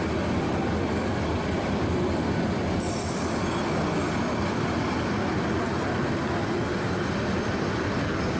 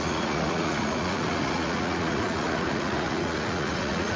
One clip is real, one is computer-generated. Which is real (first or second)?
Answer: first